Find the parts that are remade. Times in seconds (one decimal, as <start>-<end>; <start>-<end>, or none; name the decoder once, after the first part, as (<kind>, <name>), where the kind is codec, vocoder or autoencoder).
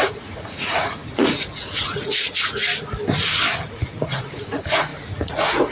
0.0-2.6 (vocoder, Vocos); 3.6-5.7